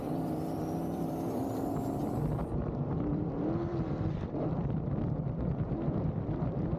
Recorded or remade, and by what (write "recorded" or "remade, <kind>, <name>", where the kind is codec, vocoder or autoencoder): remade, vocoder, BigVGAN v2